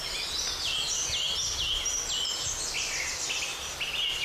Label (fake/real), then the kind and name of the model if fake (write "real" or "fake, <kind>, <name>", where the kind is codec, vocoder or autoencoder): real